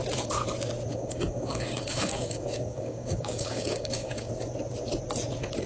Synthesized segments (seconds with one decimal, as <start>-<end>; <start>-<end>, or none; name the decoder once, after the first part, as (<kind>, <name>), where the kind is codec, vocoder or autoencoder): 0.9-4.3 (codec, DAC)

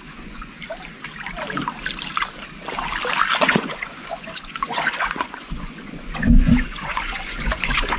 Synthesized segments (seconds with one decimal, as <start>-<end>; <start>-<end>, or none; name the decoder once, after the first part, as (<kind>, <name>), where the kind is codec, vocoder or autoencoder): 0.0-0.6 (vocoder, Vocos); 3.4-8.0

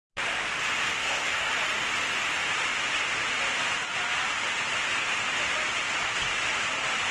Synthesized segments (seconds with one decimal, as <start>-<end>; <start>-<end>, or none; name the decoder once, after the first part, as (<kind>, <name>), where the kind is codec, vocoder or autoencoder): 1.0-1.5 (codec, SNAC)

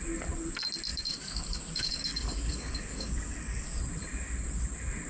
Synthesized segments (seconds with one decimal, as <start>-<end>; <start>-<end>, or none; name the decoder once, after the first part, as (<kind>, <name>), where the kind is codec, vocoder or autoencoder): 0.9-3.8 (codec, DAC)

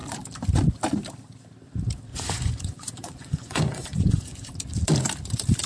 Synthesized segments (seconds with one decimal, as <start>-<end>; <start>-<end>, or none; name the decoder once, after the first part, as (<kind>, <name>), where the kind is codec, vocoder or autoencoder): 2.1-4.5 (vocoder, Vocos)

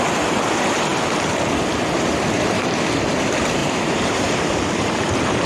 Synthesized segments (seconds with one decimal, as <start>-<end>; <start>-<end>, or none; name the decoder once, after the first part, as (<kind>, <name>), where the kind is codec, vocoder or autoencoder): 3.6-4.5 (vocoder, BigVGAN v2)

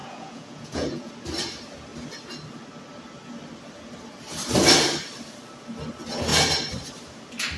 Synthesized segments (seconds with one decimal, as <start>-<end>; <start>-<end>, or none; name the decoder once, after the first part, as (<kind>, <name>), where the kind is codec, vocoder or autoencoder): 0.0-1.1 (vocoder, Vocos)